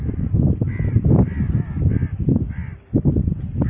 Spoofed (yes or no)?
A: no